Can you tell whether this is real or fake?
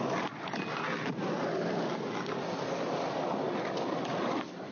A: real